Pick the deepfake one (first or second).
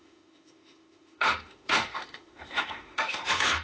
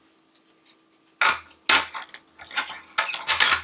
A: first